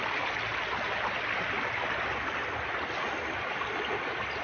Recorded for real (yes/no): yes